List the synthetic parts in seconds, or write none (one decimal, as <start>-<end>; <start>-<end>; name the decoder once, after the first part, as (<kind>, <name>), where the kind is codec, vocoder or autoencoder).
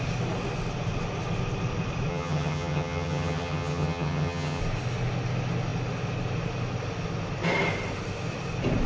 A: 2.1-4.6 (vocoder, HiFi-GAN)